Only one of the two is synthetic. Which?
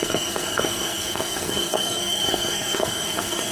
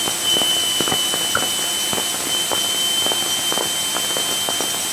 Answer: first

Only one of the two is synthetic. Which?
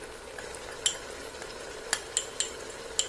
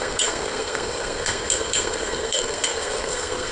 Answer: second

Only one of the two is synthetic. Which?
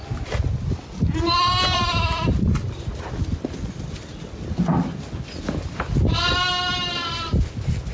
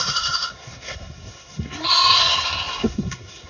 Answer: second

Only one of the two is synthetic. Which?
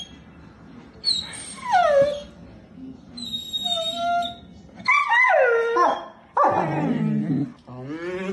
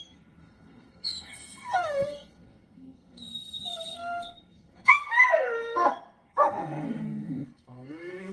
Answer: second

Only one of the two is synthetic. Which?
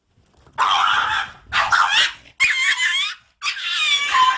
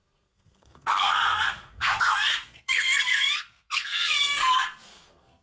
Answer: second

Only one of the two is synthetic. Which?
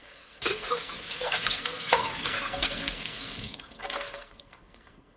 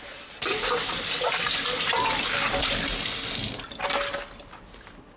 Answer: first